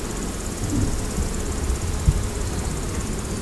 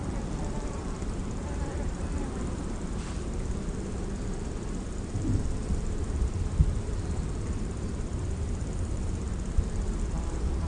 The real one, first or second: first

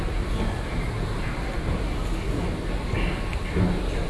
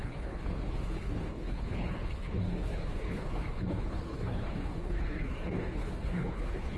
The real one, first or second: first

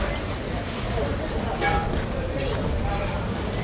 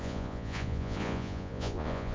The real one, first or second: first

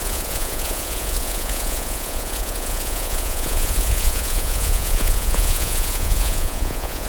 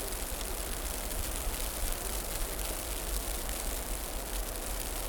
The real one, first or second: second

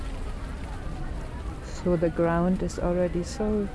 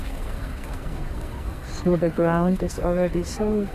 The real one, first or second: first